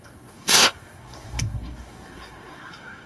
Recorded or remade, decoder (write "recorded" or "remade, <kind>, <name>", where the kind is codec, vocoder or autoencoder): remade, codec, SNAC